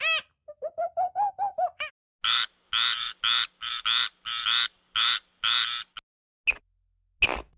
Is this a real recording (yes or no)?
yes